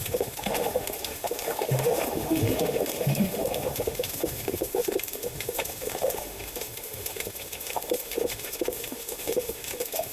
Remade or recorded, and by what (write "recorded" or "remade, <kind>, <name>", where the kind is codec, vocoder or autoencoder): remade, autoencoder, DAC-VAE